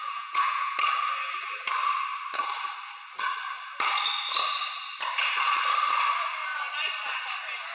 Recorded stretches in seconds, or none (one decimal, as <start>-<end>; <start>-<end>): 0.7-7.7